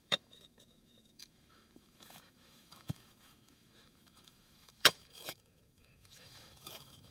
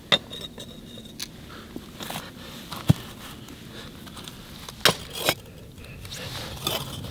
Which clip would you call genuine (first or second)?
second